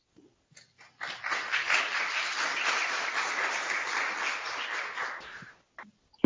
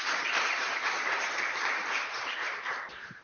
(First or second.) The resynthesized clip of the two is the second